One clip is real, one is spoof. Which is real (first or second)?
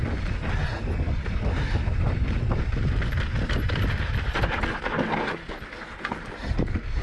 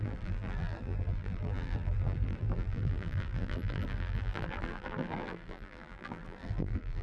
first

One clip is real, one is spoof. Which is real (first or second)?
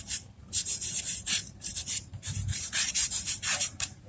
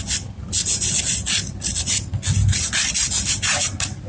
second